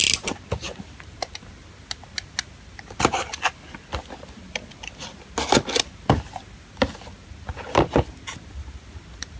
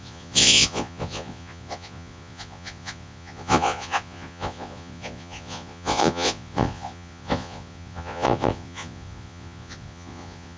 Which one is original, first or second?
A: first